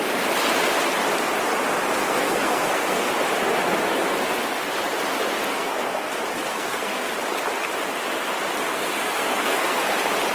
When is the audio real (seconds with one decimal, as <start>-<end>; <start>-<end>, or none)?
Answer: 0.0-2.0; 3.1-5.5; 6.1-6.5; 7.1-8.7; 9.8-10.3